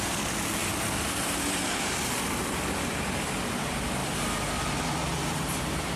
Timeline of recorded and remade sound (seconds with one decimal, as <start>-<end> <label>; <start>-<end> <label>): 0.0-0.6 recorded; 0.6-3.4 remade; 3.4-6.0 recorded